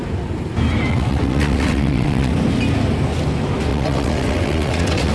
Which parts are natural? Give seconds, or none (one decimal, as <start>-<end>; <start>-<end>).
0.0-0.9; 2.3-3.7